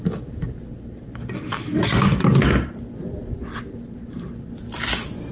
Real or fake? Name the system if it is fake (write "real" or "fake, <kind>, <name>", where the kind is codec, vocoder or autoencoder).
real